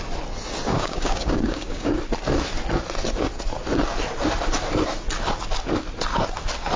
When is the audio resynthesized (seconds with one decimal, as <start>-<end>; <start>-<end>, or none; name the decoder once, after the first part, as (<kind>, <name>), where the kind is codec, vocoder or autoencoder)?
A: 0.7-2.0 (codec, DAC)